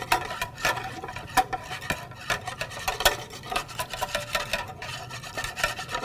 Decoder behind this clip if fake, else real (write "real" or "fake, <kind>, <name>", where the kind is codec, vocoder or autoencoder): real